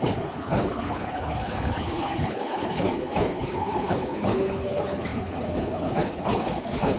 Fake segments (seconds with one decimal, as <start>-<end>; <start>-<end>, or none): 0.0-7.0